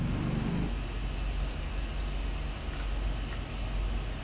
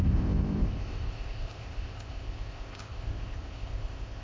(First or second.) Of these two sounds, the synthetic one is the second